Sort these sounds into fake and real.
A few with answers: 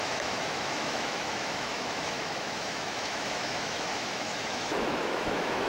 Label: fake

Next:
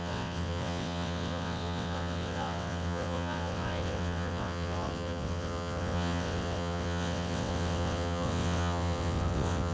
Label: fake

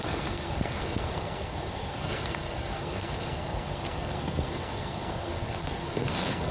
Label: fake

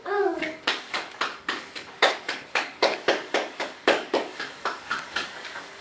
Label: fake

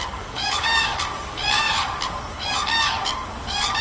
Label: fake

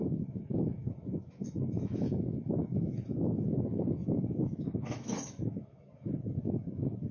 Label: fake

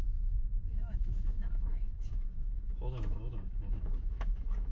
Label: fake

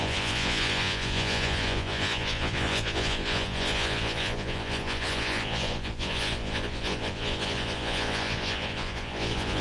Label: fake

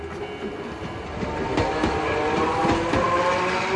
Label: real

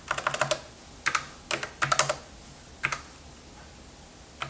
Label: real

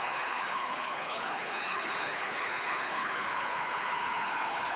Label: fake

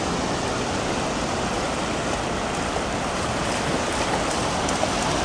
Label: real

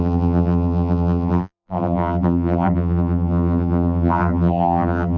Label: fake